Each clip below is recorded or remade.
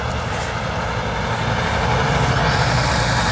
recorded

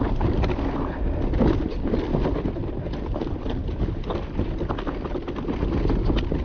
recorded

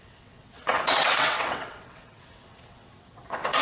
remade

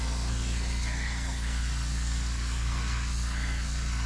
remade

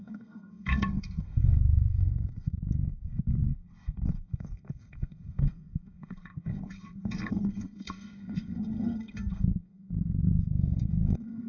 remade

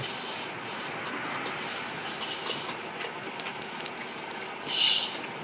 recorded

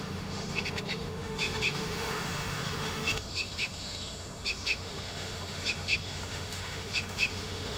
remade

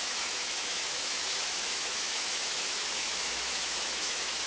remade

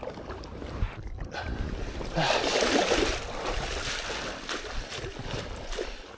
recorded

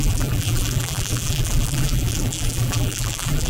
remade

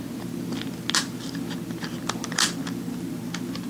recorded